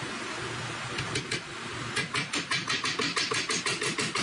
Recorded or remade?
recorded